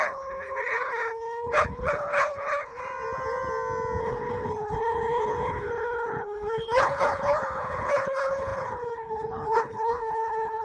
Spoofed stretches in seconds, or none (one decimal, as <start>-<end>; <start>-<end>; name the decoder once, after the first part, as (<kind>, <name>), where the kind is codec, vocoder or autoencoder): 0.0-2.8 (codec, HILCodec); 4.0-10.6